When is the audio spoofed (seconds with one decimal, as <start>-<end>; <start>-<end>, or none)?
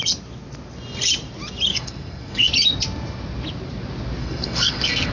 1.7-2.5; 4.2-5.1